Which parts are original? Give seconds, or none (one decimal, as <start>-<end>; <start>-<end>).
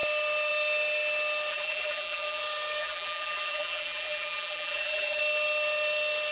0.0-1.5; 2.4-2.8; 5.2-6.3